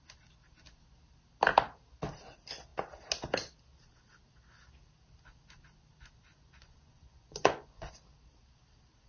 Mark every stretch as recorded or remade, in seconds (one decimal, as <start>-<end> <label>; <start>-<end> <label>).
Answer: 0.0-6.3 recorded; 6.3-7.9 remade; 7.9-9.1 recorded